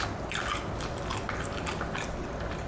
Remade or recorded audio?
recorded